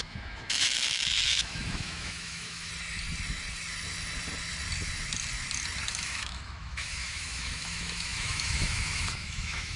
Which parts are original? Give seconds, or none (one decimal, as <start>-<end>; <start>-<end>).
2.7-5.9